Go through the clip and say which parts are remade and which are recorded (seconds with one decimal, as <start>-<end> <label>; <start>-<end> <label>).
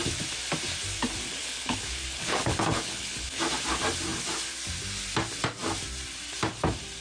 0.0-1.4 recorded; 1.4-3.4 remade; 3.4-7.0 recorded